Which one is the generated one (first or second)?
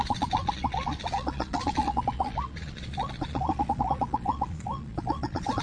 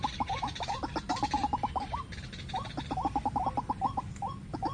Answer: first